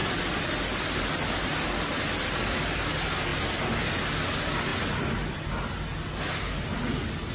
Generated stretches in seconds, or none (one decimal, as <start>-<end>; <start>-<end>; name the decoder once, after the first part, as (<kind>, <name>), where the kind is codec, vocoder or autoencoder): none